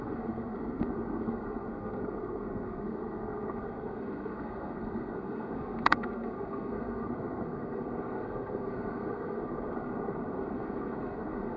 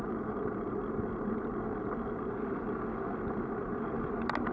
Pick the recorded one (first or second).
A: second